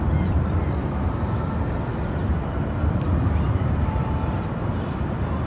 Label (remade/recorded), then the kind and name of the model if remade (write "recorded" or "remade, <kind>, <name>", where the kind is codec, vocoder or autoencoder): remade, vocoder, BigVGAN v2